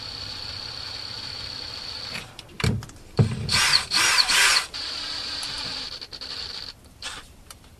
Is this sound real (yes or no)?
no